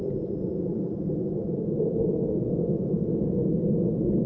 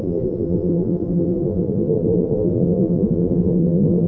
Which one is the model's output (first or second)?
second